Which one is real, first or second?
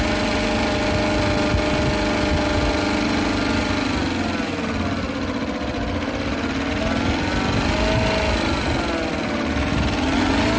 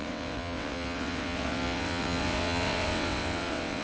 first